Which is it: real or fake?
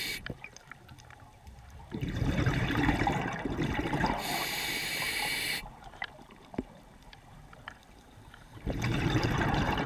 fake